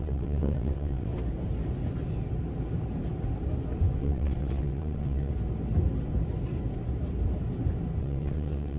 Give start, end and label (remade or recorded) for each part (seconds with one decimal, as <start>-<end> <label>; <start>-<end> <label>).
0.0-1.1 remade; 1.1-4.0 recorded; 4.0-5.3 remade; 5.3-8.0 recorded; 8.0-8.8 remade